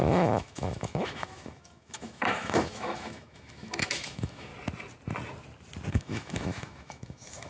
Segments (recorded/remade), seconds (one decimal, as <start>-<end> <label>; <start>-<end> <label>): 0.0-4.5 remade; 4.5-5.9 recorded; 5.9-7.5 remade